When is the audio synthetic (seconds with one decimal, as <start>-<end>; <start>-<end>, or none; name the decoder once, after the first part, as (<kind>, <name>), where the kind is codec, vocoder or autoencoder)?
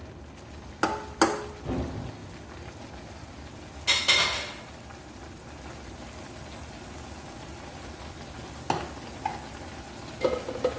none